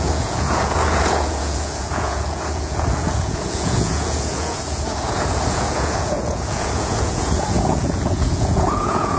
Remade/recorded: remade